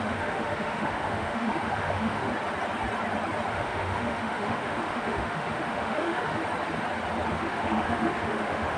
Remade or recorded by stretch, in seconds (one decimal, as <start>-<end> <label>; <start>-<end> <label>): 0.0-2.3 remade; 2.3-3.5 recorded; 3.5-6.4 remade; 6.4-7.3 recorded; 7.3-8.8 remade